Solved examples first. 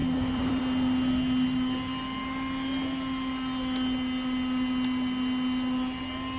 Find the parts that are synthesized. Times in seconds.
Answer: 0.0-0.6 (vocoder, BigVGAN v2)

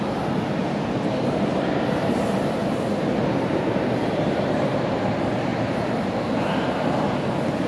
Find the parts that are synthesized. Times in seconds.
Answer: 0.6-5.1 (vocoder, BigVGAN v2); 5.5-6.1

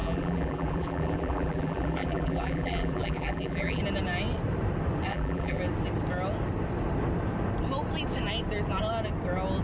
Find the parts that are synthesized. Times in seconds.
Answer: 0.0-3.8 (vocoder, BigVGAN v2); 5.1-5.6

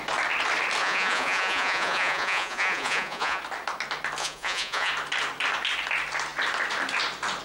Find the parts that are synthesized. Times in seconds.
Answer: 0.8-3.4 (vocoder, Vocos); 4.2-4.9

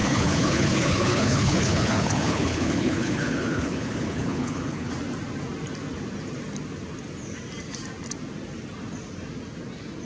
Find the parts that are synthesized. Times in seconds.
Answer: 0.0-4.9 (codec, HILCodec)

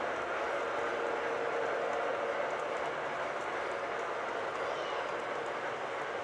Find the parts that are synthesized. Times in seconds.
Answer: none

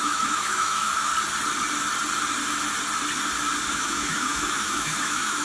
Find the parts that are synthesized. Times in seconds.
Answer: 0.0-1.1 (autoencoder, DAC-VAE); 3.7-5.4